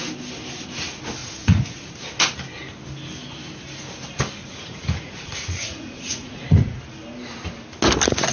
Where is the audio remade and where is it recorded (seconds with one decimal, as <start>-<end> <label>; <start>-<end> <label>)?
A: 0.0-1.2 recorded; 1.2-1.9 remade; 1.9-4.4 recorded; 4.4-6.8 remade; 6.8-8.3 recorded